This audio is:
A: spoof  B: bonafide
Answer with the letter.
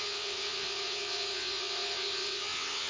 A